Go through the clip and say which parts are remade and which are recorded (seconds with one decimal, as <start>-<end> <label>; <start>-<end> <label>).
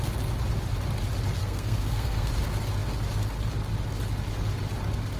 0.0-1.4 recorded; 1.4-2.3 remade; 2.3-5.2 recorded